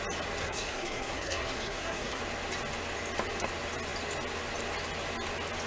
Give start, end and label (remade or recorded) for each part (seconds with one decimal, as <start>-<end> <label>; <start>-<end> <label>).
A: 0.0-0.4 recorded; 0.4-2.2 remade; 2.2-5.7 recorded